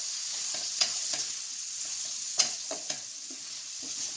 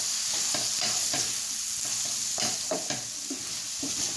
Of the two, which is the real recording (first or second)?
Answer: second